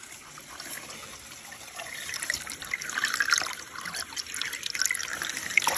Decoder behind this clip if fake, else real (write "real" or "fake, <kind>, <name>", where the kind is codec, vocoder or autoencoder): real